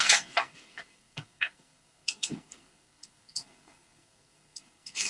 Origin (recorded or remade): remade